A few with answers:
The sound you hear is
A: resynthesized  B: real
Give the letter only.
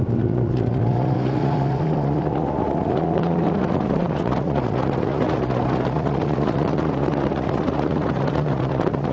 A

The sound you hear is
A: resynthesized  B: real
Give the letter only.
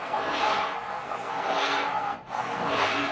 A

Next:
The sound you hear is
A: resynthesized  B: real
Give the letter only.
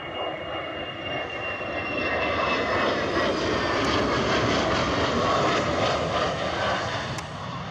B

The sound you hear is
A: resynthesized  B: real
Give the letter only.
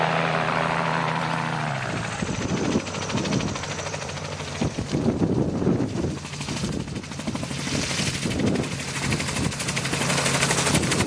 A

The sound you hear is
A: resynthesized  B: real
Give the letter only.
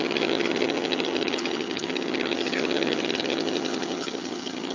A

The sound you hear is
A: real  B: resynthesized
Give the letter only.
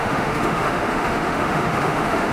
B